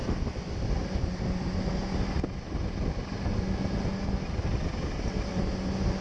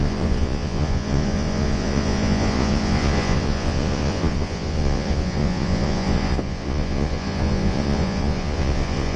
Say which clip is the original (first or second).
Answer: first